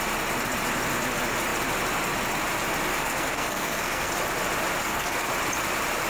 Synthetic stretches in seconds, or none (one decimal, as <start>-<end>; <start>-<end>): 2.9-4.1; 4.8-5.3